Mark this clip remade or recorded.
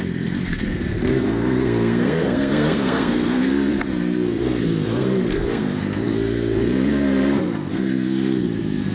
remade